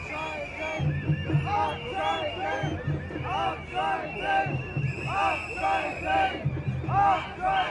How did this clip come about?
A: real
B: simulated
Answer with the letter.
A